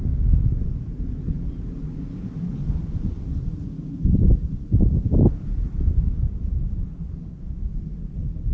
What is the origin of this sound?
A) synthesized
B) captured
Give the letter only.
B